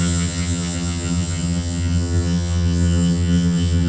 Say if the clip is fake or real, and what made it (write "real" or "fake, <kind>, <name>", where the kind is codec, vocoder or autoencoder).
fake, vocoder, HiFi-GAN